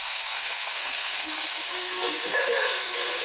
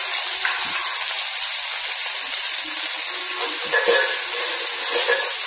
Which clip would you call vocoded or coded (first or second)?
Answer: first